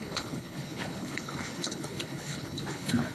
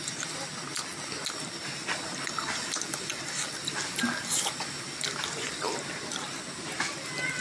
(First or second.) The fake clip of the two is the first